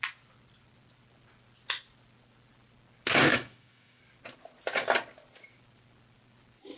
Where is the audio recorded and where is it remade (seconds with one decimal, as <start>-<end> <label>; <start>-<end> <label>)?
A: 0.0-3.3 recorded; 3.3-4.0 remade; 4.0-6.8 recorded

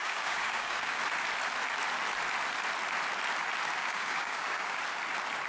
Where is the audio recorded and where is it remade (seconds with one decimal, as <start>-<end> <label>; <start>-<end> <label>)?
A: 0.0-1.0 remade; 1.0-3.8 recorded; 3.8-4.8 remade; 4.8-5.5 recorded

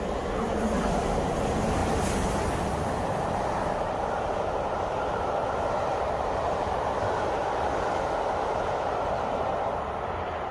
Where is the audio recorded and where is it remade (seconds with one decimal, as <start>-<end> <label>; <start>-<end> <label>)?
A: 0.0-7.4 remade; 7.4-8.3 recorded; 8.3-10.5 remade

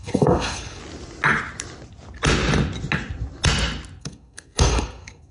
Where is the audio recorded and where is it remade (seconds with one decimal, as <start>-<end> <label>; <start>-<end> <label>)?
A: 0.0-0.8 remade; 0.8-4.0 recorded; 4.0-5.3 remade

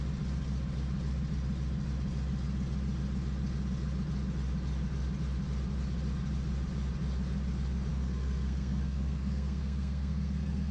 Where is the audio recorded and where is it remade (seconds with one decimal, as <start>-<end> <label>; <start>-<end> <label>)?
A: 0.0-7.9 recorded; 7.9-10.7 remade

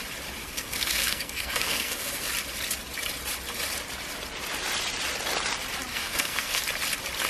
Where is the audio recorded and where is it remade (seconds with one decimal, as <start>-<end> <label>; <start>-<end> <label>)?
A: 0.0-0.4 recorded; 0.4-2.3 remade; 2.3-5.9 recorded; 5.9-6.6 remade; 6.6-7.3 recorded

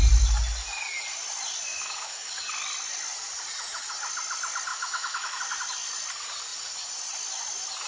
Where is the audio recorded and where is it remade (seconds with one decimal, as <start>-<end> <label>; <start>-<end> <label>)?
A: 0.0-1.7 recorded; 1.7-2.3 remade; 2.3-4.7 recorded; 4.7-5.4 remade; 5.4-7.9 recorded